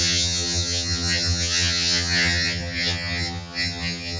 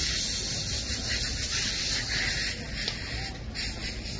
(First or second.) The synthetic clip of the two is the first